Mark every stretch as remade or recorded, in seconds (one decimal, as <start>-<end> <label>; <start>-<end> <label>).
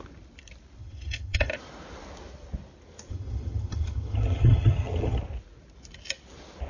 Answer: 0.0-0.8 recorded; 0.8-1.5 remade; 1.5-3.1 recorded; 3.1-5.2 remade; 5.2-6.7 recorded